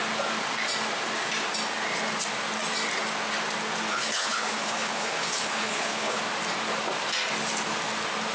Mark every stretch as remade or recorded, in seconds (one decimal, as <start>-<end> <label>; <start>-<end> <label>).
0.0-3.9 recorded; 3.9-6.2 remade; 6.2-8.3 recorded